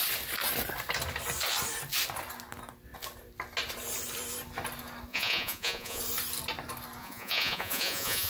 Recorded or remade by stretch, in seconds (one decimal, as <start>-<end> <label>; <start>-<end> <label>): 0.0-5.1 recorded; 5.1-6.0 remade; 6.0-7.0 recorded; 7.0-8.3 remade